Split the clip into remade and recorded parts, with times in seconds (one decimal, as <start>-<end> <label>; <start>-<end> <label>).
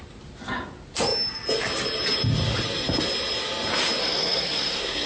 0.0-4.0 recorded; 4.0-5.1 remade